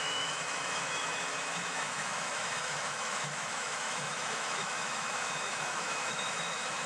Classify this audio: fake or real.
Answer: fake